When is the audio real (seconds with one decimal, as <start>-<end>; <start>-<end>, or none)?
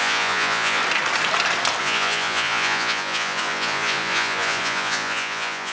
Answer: 0.8-1.8